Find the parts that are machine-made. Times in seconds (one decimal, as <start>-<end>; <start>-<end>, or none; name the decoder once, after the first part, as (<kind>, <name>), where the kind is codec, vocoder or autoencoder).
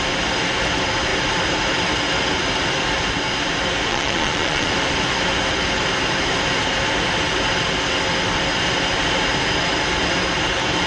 3.9-4.7 (vocoder, Vocos)